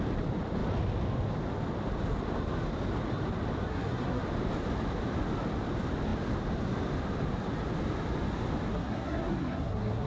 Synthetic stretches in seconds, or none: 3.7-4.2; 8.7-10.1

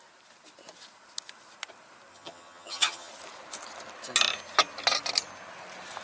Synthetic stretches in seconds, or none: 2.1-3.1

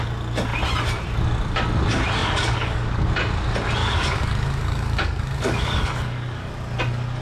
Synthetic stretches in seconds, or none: 2.2-3.1; 3.8-6.5

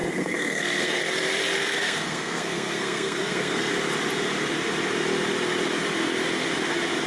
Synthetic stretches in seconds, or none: 0.0-1.0; 1.6-3.7